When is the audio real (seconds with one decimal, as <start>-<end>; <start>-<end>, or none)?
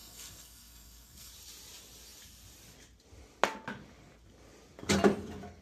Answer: 1.3-5.6